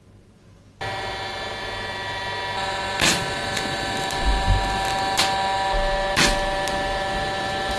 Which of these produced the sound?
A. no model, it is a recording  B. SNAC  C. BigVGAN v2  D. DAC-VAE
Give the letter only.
A